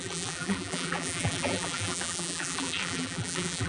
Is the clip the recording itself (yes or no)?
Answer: no